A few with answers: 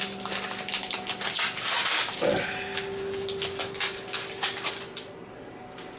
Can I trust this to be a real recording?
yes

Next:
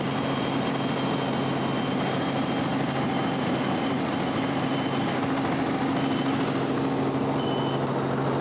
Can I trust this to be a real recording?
yes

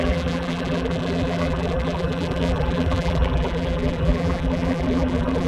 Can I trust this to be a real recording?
no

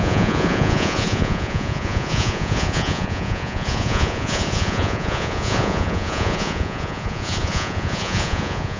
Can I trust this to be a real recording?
no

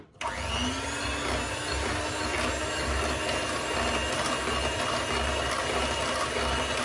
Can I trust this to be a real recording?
yes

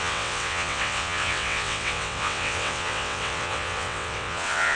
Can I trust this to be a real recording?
no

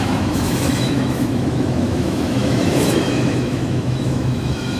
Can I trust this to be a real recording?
no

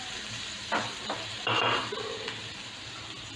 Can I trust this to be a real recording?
yes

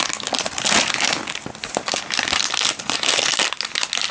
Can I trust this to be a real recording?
yes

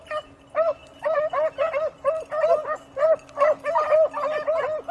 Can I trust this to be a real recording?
yes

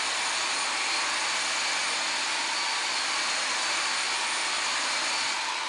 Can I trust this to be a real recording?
yes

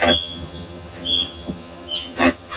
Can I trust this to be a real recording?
no